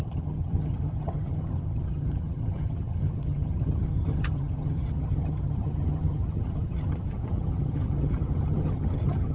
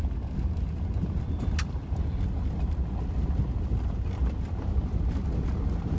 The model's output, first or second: first